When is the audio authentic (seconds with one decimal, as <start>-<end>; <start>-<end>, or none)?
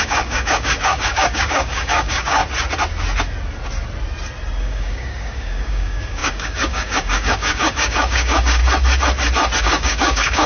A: 2.4-4.6; 8.6-9.6